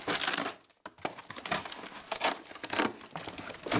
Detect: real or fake real